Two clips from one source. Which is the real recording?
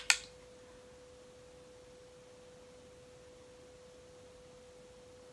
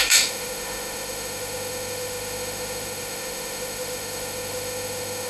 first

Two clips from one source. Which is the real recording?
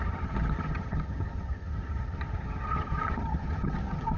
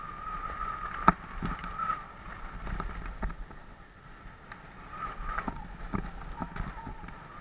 second